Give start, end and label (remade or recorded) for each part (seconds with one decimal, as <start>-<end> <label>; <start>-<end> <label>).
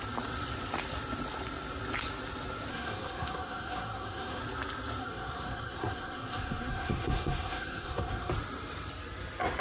0.0-2.7 recorded; 2.7-4.4 remade; 4.4-5.0 recorded; 5.0-8.3 remade; 8.3-9.6 recorded